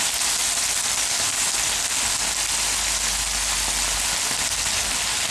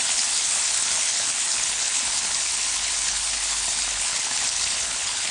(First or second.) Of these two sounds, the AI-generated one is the second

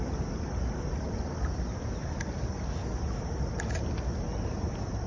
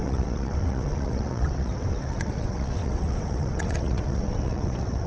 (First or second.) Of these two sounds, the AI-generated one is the second